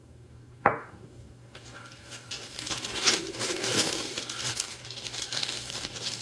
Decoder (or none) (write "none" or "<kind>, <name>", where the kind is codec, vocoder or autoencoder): codec, DAC